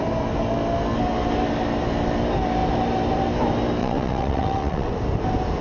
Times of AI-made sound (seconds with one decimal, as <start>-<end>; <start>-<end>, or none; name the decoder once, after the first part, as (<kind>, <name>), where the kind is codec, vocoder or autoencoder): 3.8-4.9 (vocoder, WaveNeXt)